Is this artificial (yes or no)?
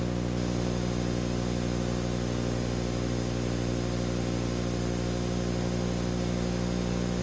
no